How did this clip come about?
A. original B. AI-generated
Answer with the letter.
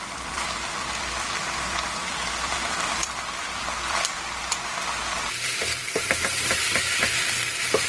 B